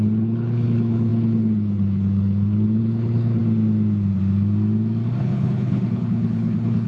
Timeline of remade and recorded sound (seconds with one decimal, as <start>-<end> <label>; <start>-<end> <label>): 0.0-3.4 remade; 3.4-5.2 recorded; 5.2-6.9 remade